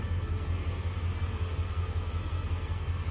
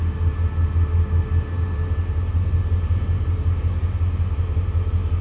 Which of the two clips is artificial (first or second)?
first